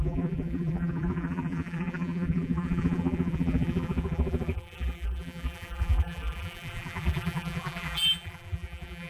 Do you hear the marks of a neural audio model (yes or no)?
yes